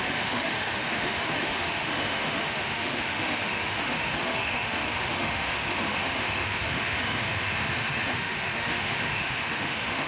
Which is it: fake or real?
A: fake